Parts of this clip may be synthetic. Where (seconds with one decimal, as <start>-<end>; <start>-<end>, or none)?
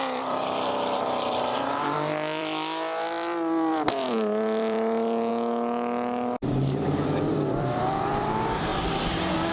0.0-5.3; 6.5-8.7